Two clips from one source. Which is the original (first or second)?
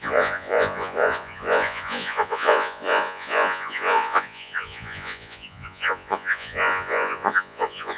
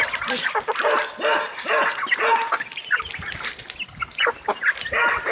second